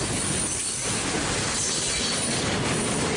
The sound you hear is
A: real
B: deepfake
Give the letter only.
A